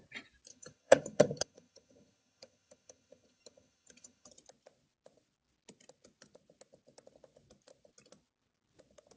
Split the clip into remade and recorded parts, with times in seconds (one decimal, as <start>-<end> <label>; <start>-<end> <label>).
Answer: 0.0-0.5 recorded; 0.5-4.3 remade; 4.3-9.2 recorded